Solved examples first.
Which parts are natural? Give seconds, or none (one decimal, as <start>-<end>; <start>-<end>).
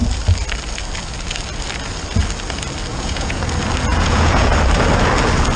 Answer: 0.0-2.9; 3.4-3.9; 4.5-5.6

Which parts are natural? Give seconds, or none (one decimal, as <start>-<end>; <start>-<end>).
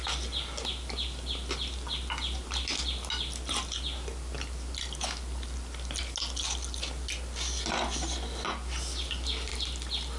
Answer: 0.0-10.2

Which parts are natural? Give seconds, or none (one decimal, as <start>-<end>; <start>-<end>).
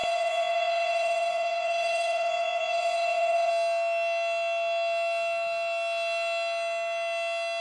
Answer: 3.5-7.6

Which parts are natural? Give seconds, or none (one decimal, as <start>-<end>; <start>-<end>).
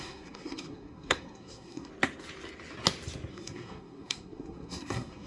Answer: 1.9-3.3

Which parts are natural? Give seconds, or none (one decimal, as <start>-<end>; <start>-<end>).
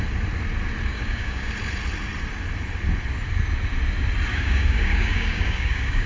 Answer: 0.0-0.9; 1.5-4.3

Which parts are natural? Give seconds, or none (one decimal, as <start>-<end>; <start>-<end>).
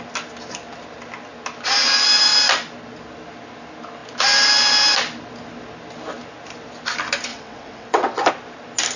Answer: 0.0-7.3; 8.3-9.0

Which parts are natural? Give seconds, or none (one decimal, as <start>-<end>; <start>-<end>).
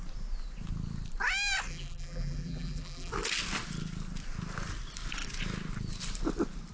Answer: 0.0-1.7; 3.1-6.7